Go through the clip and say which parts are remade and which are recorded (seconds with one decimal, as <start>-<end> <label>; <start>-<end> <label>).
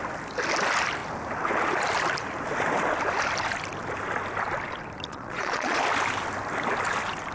0.0-5.1 recorded; 5.1-5.8 remade; 5.8-7.3 recorded